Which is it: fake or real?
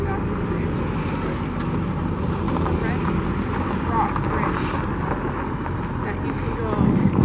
real